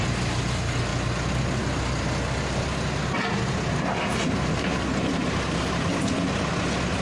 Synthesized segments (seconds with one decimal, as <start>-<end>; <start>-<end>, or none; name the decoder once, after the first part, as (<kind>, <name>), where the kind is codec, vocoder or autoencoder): none